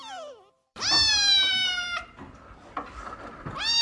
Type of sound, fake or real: fake